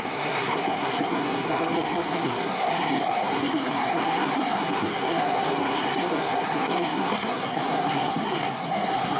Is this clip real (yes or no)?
no